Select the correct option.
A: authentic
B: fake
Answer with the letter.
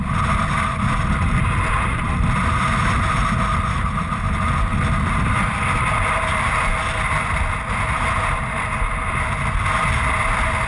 A